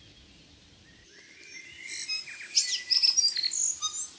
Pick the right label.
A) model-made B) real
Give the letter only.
B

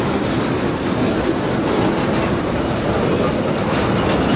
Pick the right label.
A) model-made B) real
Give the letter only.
B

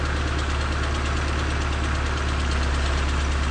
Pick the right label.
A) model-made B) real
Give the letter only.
B